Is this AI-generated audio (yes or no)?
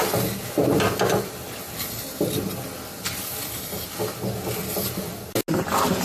no